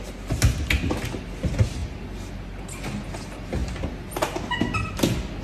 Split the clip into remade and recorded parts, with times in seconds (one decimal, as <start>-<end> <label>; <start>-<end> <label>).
0.0-5.4 recorded